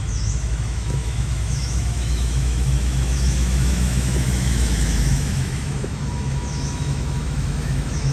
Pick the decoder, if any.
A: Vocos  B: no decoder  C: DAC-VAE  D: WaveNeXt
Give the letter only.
C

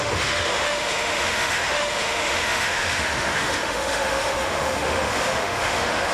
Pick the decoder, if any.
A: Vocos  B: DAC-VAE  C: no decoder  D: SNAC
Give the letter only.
B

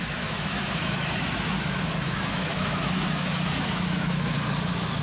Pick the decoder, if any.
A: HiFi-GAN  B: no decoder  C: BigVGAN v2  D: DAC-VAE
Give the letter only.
D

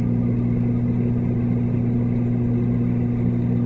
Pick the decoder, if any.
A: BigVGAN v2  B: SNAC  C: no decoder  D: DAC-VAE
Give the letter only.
C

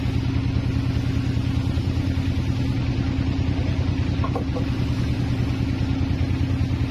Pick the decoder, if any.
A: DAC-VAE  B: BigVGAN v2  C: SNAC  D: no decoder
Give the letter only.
D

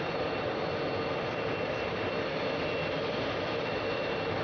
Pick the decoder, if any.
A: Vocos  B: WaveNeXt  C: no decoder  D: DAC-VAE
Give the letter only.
C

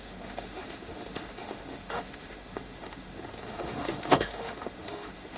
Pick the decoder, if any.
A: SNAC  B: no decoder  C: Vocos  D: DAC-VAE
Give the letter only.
D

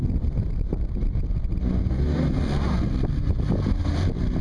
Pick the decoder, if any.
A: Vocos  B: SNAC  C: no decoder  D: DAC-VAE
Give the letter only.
C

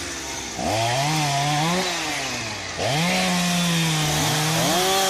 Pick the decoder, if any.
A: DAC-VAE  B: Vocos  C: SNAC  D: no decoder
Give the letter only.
D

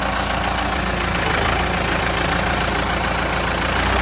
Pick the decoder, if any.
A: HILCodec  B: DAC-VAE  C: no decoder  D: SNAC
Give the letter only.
C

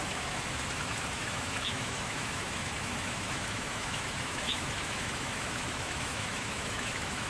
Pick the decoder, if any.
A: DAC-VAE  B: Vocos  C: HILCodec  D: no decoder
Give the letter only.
A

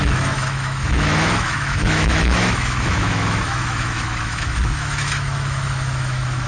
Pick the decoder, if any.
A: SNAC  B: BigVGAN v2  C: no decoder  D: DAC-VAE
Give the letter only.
D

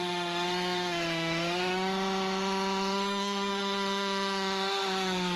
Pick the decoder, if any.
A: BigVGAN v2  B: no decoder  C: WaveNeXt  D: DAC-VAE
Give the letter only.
D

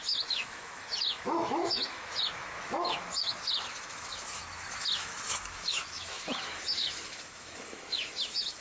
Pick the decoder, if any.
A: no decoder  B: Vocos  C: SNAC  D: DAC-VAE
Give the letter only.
D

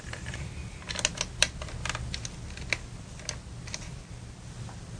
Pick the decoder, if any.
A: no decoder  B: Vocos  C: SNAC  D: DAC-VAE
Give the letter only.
A